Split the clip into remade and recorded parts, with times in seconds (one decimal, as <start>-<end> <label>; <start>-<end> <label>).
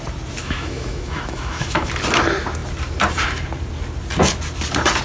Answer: 0.0-0.4 recorded; 0.4-1.9 remade; 1.9-5.0 recorded